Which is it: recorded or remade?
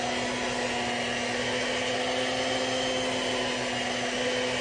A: recorded